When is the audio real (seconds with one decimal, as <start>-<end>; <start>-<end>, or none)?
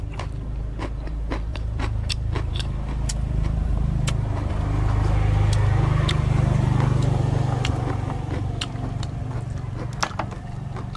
0.0-1.5; 4.5-11.0